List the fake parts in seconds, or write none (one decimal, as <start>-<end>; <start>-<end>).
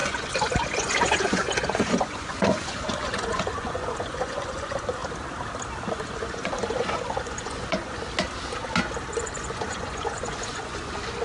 0.0-5.0; 5.9-8.0; 9.1-11.2